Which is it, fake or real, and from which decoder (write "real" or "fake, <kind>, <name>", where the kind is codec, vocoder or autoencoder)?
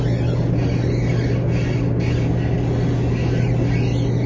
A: real